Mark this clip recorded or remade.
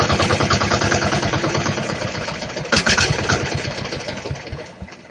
remade